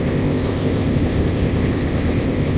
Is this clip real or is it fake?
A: fake